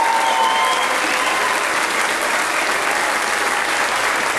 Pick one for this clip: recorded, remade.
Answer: recorded